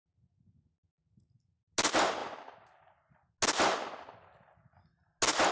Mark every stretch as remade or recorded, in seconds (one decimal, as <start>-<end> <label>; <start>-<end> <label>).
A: 0.0-5.5 recorded